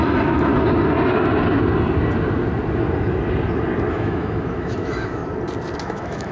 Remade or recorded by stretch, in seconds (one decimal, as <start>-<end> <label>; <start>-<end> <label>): 0.0-0.5 remade; 0.5-3.9 recorded; 3.9-5.2 remade; 5.2-5.8 recorded; 5.8-6.3 remade

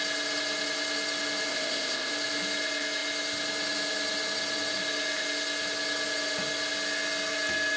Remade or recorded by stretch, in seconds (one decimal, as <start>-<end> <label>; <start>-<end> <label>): 0.0-1.5 recorded; 1.5-2.1 remade; 2.1-7.8 recorded

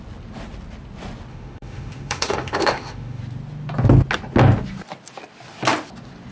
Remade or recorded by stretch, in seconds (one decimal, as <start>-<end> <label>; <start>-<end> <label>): 0.0-1.3 recorded; 1.3-3.2 remade; 3.2-6.3 recorded

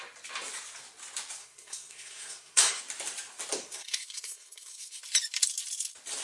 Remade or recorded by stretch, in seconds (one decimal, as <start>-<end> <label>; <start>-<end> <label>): 0.0-1.4 recorded; 1.4-2.8 remade; 2.8-3.6 recorded; 3.6-5.0 remade; 5.0-6.2 recorded

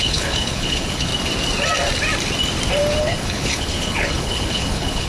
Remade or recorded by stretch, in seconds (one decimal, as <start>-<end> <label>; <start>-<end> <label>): 0.0-1.1 remade; 1.1-3.0 recorded; 3.0-5.1 remade

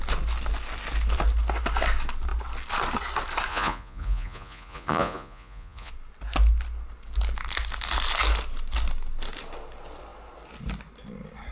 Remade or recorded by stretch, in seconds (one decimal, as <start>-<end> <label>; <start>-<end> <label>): 0.0-3.5 recorded; 3.5-5.9 remade; 5.9-11.5 recorded

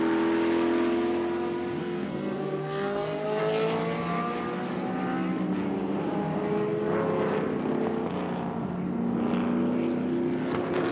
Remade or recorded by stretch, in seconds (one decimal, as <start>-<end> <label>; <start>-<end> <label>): 0.0-1.8 recorded; 1.8-3.4 remade; 3.4-10.9 recorded

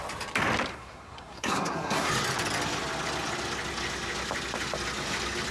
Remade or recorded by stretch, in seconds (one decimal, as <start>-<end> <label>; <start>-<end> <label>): 0.0-0.7 recorded; 0.7-2.1 remade; 2.1-5.5 recorded